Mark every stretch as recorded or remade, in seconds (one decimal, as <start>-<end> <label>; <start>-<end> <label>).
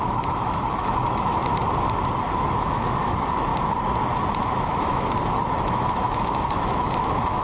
0.0-1.4 remade; 1.4-2.3 recorded; 2.3-3.5 remade; 3.5-4.4 recorded; 4.4-7.4 remade